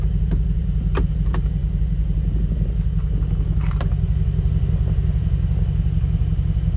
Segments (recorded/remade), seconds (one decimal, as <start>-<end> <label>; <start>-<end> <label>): 0.0-6.8 recorded